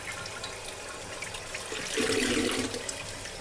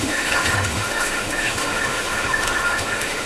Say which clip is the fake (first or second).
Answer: second